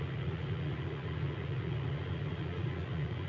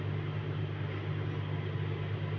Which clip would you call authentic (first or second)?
second